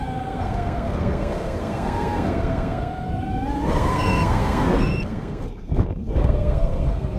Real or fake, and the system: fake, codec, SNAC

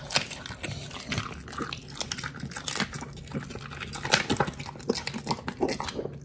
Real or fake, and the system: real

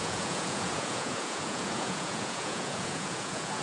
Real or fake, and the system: fake, vocoder, Vocos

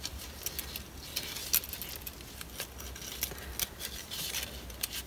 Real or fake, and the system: real